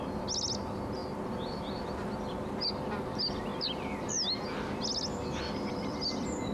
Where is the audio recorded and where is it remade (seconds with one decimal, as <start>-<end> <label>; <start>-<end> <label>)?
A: 0.0-6.5 recorded